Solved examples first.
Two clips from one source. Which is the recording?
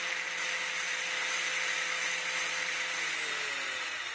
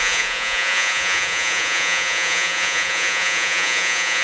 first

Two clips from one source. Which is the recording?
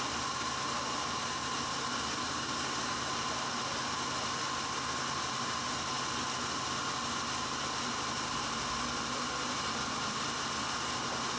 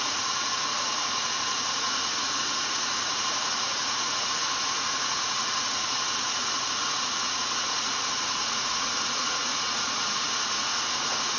first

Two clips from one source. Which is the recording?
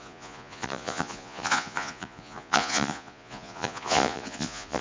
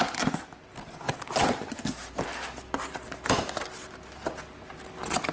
second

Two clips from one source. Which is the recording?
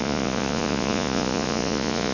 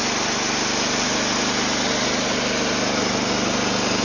second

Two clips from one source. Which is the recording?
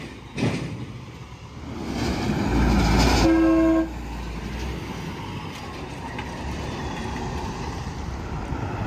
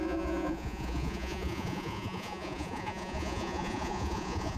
first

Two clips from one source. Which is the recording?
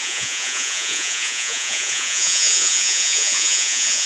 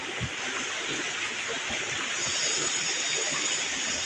second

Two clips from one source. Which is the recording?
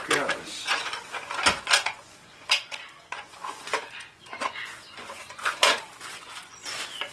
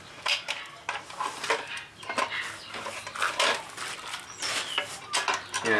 second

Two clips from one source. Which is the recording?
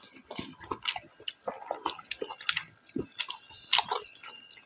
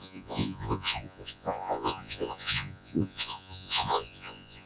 first